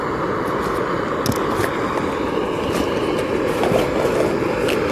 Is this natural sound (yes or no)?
yes